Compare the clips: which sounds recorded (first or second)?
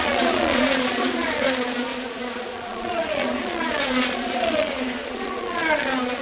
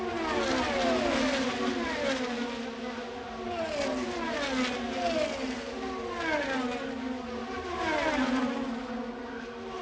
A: second